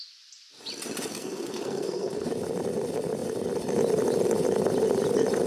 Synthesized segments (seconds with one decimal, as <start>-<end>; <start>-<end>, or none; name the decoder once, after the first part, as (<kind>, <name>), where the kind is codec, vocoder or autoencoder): 1.1-2.3 (codec, SNAC)